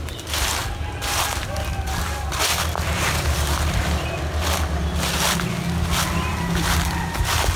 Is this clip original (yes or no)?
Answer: yes